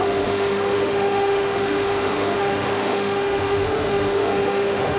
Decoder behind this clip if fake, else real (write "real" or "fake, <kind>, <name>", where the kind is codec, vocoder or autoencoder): fake, autoencoder, DAC-VAE